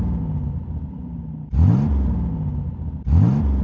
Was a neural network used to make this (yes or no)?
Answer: no